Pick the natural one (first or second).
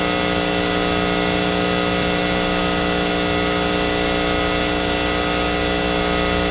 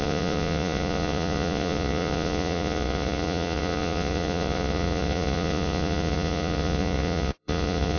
first